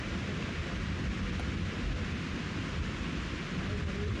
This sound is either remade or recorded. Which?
recorded